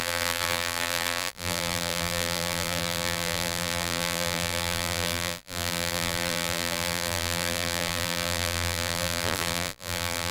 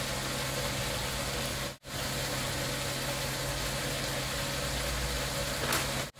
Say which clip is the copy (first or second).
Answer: first